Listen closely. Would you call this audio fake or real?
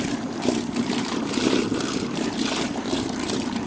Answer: fake